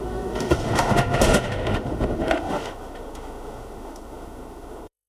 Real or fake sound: fake